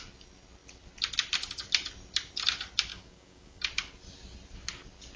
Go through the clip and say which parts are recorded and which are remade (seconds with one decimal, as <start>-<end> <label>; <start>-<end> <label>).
0.0-2.9 recorded; 2.9-3.6 remade; 3.6-5.2 recorded